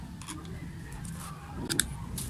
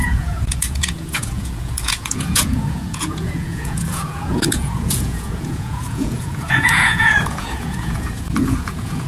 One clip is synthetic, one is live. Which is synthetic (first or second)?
second